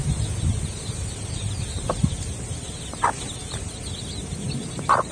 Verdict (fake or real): real